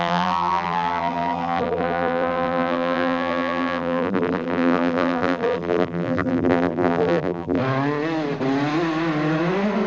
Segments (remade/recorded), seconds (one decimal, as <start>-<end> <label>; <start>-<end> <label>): 0.0-7.6 remade; 7.6-9.9 recorded